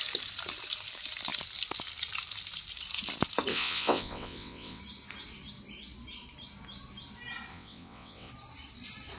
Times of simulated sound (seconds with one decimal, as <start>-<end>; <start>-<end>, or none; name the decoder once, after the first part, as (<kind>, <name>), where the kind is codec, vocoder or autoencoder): 3.5-4.8 (vocoder, WaveNeXt); 7.5-8.3